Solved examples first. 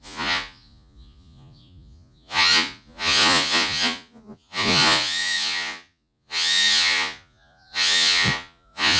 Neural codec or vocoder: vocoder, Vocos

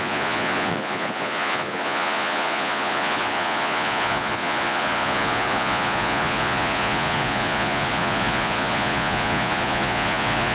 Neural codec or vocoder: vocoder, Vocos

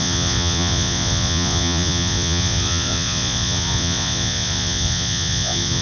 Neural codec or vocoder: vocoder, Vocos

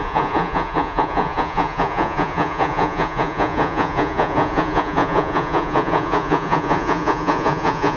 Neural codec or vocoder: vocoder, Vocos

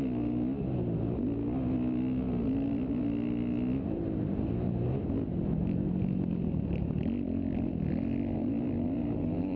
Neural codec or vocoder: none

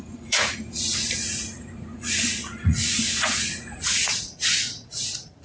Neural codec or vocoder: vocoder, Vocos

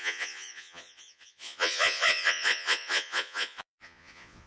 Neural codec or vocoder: vocoder, Vocos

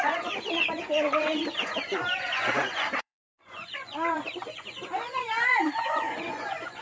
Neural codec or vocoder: vocoder, Vocos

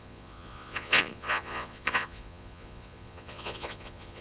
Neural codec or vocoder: vocoder, Vocos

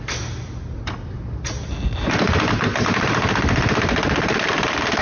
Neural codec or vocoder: none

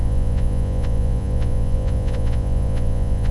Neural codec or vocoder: vocoder, Vocos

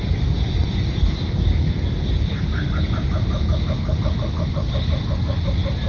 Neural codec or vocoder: none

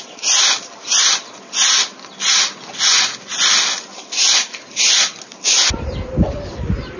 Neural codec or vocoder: none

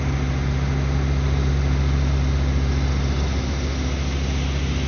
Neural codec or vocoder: none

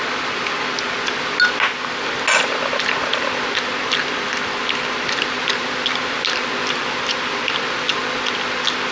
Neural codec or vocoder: none